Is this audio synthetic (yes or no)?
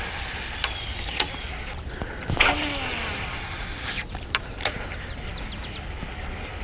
no